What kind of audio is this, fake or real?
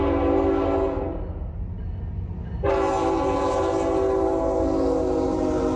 real